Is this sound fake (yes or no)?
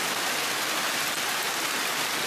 no